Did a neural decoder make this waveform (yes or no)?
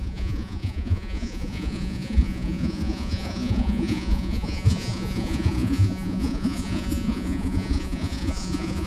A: yes